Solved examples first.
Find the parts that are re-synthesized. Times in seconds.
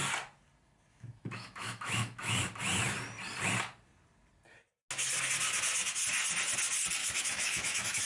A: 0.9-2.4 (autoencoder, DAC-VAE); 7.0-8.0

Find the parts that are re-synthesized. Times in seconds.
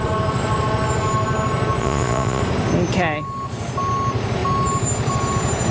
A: 1.8-2.4 (vocoder, Vocos)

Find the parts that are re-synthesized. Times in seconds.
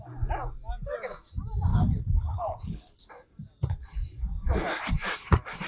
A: 1.7-3.1 (codec, HILCodec)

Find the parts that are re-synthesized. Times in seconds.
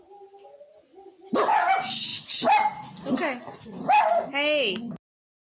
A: none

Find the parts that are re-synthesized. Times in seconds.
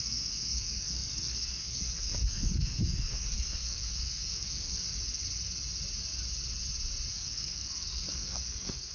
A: 0.0-4.9 (codec, SNAC); 7.1-8.9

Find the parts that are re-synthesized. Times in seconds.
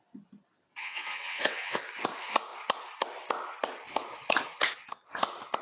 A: 0.8-1.8 (vocoder, WaveNeXt)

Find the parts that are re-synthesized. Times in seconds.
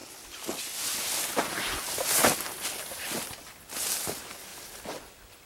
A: none